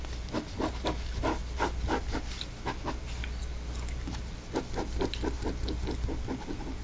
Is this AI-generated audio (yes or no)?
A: no